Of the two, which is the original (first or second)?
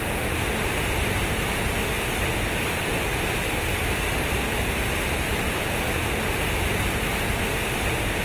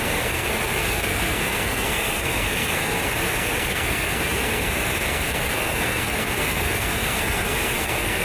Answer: first